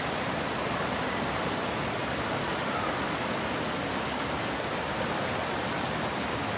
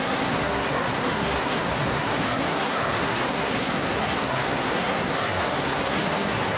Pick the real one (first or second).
first